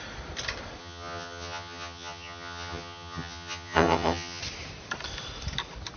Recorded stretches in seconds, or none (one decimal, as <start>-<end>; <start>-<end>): 0.0-0.8; 4.4-6.0